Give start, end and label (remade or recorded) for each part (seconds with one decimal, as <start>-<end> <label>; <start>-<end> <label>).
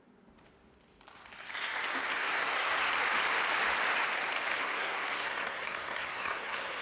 0.0-2.1 recorded; 2.1-2.9 remade; 2.9-4.6 recorded; 4.6-6.8 remade